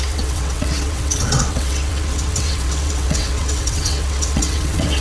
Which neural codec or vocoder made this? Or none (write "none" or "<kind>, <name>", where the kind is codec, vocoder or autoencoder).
vocoder, WaveNeXt